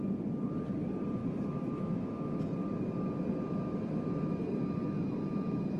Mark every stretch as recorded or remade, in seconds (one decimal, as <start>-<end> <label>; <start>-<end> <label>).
0.0-1.2 recorded; 1.2-2.4 remade; 2.4-5.8 recorded